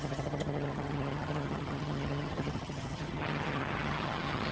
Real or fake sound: fake